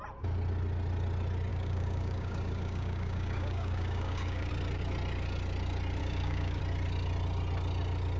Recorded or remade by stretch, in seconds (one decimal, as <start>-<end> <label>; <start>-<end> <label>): 0.0-1.5 recorded; 1.5-4.5 remade; 4.5-6.0 recorded; 6.0-6.6 remade; 6.6-8.2 recorded